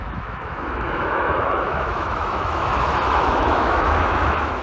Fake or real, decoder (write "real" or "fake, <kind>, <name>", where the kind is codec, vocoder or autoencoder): fake, autoencoder, DAC-VAE